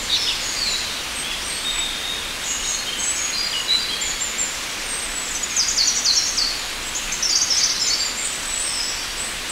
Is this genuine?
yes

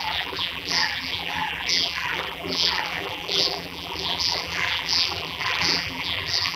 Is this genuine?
no